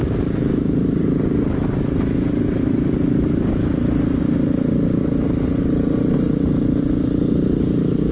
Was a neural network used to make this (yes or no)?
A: no